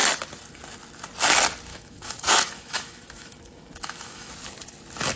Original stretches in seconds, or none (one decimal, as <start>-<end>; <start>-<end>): 0.0-1.7; 4.3-5.2